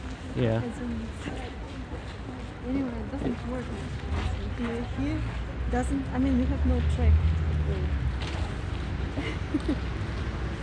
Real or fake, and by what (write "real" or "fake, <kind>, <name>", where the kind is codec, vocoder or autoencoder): real